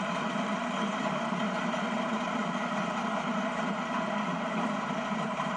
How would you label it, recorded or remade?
remade